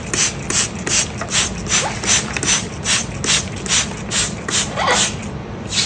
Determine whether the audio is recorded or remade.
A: recorded